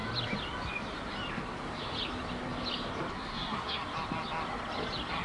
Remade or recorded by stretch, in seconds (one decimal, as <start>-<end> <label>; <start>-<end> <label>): 0.0-3.1 recorded; 3.1-3.8 remade; 3.8-5.2 recorded